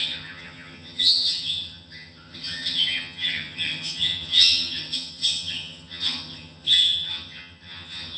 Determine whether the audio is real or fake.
fake